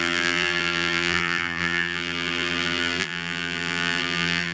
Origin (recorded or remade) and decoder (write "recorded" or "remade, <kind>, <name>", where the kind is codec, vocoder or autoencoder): remade, vocoder, BigVGAN v2